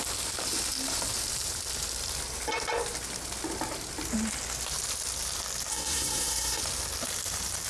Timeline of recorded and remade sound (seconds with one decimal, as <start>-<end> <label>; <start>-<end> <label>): 0.0-5.7 recorded; 5.7-6.6 remade; 6.6-7.7 recorded